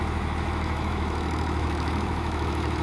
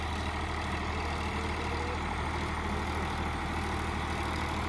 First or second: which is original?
second